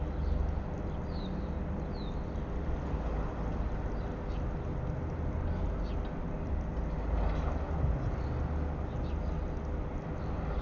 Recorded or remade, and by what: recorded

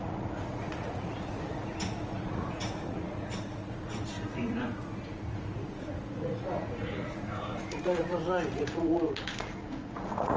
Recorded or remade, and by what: remade, vocoder, Vocos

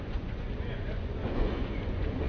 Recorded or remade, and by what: remade, vocoder, Vocos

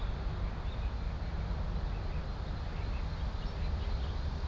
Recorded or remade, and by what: recorded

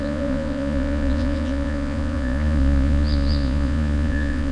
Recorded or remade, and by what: remade, vocoder, Vocos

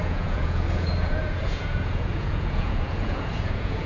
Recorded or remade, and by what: remade, vocoder, Vocos